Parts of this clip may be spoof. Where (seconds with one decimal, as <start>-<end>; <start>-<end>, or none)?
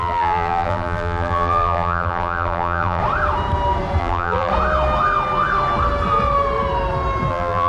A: 0.0-3.0; 4.0-4.5; 7.3-7.7